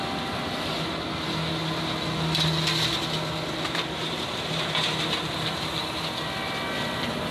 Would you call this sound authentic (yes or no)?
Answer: yes